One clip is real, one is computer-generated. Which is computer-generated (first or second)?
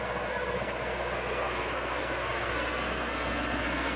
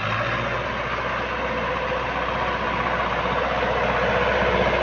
first